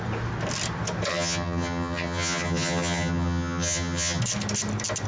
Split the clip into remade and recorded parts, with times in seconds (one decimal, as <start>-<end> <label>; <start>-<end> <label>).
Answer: 0.0-1.1 recorded; 1.1-4.2 remade; 4.2-5.1 recorded